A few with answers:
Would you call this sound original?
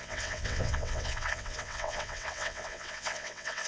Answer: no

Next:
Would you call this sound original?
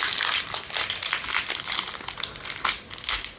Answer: yes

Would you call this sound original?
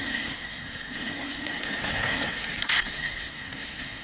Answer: no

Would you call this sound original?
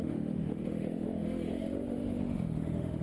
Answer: no